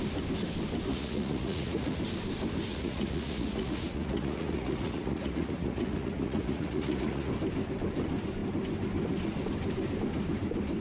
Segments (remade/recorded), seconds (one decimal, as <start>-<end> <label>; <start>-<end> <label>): 0.0-0.9 recorded; 0.9-2.0 remade; 2.0-2.7 recorded; 2.7-7.3 remade; 7.3-10.8 recorded